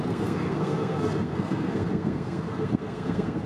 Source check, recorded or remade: remade